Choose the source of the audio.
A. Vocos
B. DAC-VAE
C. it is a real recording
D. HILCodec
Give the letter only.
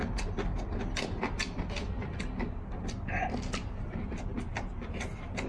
C